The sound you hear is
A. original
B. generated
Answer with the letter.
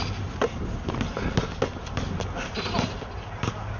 A